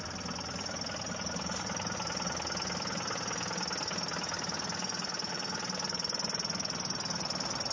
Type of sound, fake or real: real